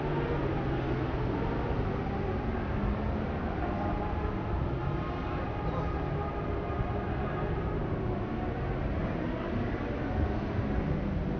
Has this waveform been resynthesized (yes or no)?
no